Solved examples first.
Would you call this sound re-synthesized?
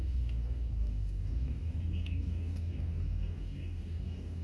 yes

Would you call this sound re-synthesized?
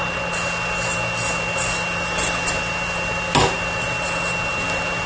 no